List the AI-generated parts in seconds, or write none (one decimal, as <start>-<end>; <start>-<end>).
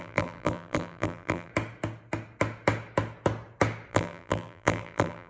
0.0-1.5; 3.9-5.3